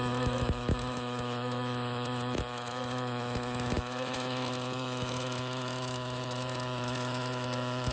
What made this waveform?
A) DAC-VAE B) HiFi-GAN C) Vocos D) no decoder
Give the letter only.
A